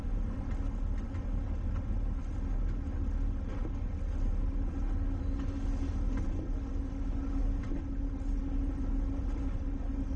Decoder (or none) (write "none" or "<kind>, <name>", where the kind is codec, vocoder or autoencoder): none